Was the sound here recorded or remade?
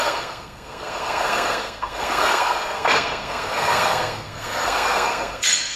remade